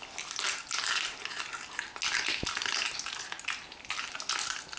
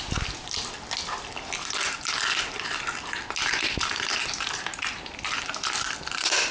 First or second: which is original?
first